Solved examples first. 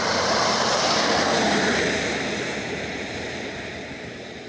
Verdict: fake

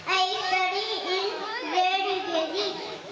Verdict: fake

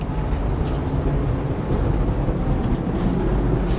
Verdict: real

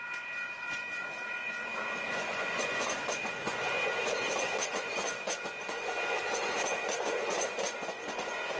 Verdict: fake